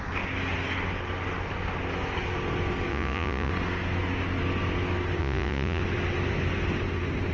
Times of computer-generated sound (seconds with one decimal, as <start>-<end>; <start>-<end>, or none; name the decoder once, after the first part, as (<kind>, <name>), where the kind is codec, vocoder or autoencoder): 2.9-3.5 (vocoder, Vocos); 5.2-5.8